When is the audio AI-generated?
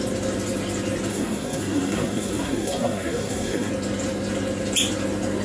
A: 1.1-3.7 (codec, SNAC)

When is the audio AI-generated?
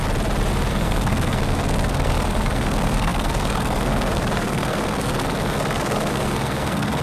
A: 0.7-7.0 (codec, SNAC)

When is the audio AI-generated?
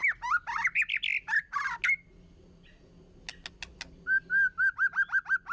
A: none